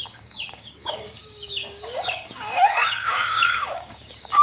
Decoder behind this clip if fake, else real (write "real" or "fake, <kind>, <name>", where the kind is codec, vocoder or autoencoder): fake, codec, DAC